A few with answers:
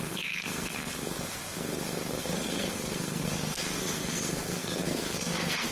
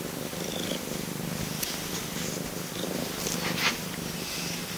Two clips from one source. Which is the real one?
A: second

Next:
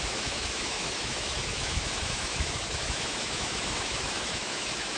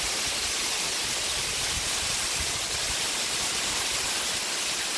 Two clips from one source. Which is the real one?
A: second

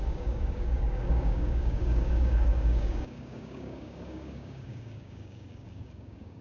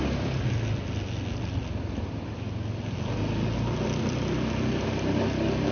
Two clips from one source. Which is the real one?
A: second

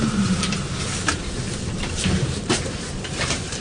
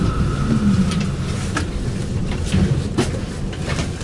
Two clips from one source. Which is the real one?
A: second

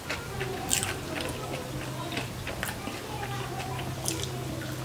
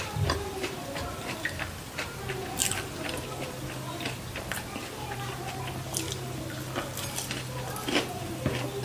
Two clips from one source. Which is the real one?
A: first